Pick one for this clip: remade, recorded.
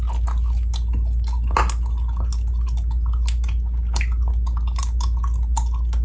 recorded